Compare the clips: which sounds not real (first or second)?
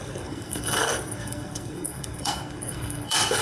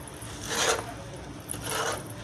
first